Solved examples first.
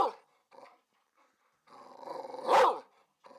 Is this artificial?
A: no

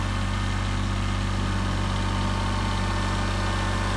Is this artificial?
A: no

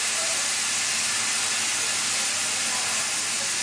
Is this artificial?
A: no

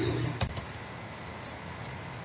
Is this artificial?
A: yes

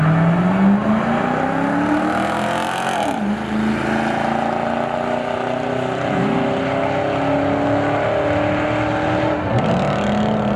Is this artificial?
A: no